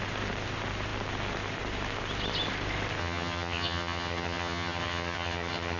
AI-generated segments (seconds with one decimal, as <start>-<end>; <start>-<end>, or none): 3.0-5.8